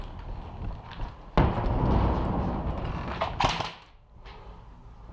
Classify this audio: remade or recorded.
recorded